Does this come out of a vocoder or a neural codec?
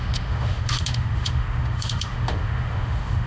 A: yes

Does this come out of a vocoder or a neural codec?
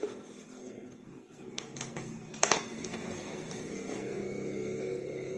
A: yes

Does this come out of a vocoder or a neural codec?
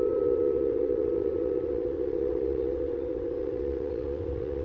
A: yes